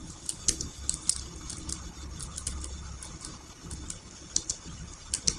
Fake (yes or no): no